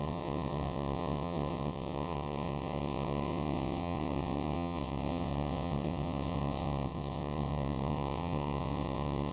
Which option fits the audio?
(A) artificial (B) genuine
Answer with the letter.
A